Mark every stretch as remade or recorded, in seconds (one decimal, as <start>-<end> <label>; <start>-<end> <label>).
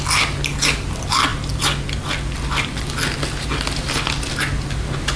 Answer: 0.0-5.2 recorded